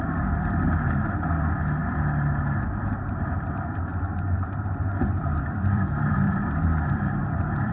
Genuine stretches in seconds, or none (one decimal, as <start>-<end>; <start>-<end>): 3.9-4.6